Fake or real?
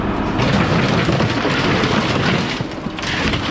real